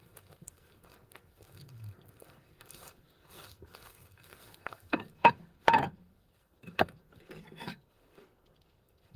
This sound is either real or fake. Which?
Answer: fake